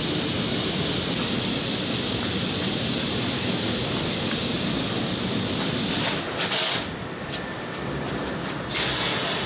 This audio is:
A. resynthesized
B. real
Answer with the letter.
B